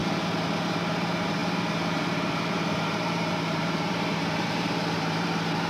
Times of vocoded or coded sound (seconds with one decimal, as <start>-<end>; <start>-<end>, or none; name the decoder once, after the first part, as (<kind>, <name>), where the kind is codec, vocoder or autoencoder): 0.6-5.7 (vocoder, BigVGAN v2)